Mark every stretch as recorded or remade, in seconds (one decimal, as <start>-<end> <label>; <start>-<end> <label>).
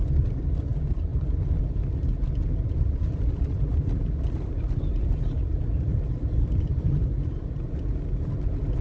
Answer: 0.0-1.1 recorded; 1.1-1.6 remade; 1.6-8.8 recorded